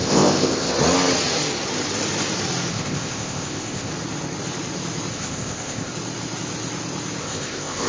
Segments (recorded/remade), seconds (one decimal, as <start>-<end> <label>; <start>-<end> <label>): 0.0-0.7 remade; 0.7-2.7 recorded; 2.7-3.9 remade; 3.9-5.1 recorded; 5.1-5.9 remade; 5.9-7.2 recorded; 7.2-7.9 remade